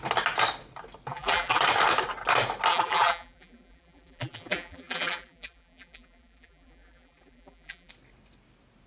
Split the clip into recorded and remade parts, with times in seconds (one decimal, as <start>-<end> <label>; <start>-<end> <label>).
0.0-1.1 recorded; 1.1-1.6 remade; 1.6-2.7 recorded; 2.7-7.9 remade; 7.9-8.9 recorded